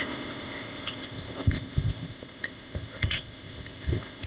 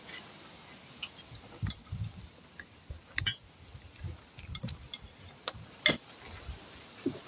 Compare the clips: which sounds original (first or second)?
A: second